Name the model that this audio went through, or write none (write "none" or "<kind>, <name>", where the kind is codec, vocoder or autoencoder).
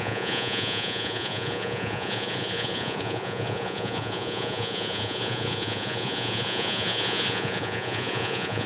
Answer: vocoder, Vocos